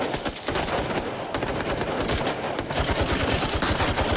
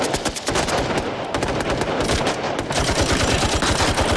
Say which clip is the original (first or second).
second